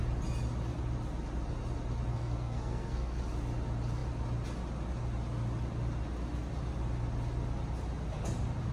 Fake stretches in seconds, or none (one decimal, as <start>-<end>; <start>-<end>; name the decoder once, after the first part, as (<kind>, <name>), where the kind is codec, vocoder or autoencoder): 2.1-3.2 (codec, SNAC)